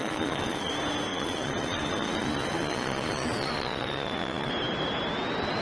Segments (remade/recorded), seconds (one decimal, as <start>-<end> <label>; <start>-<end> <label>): 0.0-0.7 remade; 0.7-1.1 recorded; 1.1-4.5 remade; 4.5-5.6 recorded